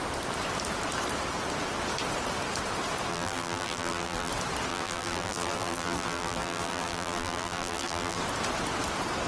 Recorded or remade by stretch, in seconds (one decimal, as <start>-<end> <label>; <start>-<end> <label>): 0.0-3.1 recorded; 3.1-4.3 remade; 4.3-4.7 recorded; 4.7-8.2 remade; 8.2-9.3 recorded